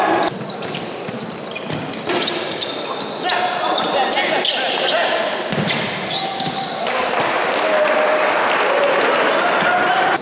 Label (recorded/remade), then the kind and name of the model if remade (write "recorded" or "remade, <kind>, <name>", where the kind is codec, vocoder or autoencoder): recorded